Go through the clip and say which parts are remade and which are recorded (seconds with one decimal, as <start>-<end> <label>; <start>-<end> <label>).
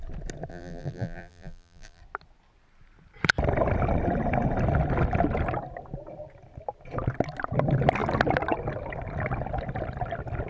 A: 0.0-0.5 recorded; 0.5-2.0 remade; 2.0-10.5 recorded